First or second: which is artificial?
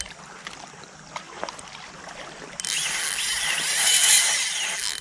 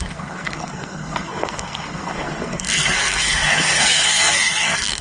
second